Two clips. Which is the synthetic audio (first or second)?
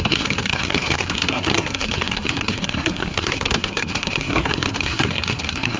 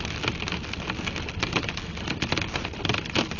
first